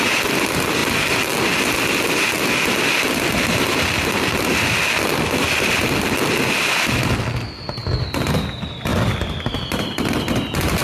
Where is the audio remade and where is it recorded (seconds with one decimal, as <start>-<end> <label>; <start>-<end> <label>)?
0.0-10.8 recorded